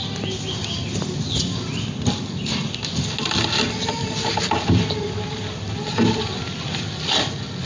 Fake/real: real